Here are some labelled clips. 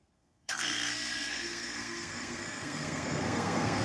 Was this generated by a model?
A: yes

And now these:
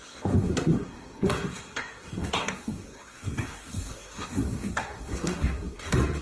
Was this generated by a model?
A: yes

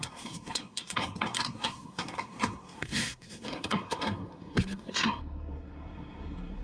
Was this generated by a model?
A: yes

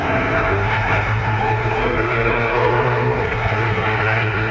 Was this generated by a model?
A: yes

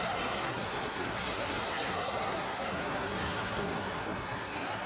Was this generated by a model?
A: yes